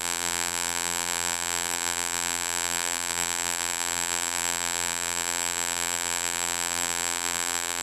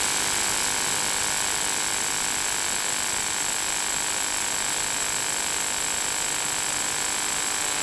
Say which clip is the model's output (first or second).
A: first